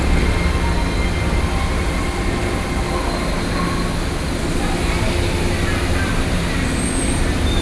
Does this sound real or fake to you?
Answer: real